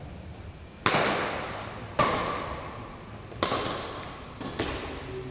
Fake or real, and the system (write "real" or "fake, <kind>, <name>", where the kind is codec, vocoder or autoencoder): real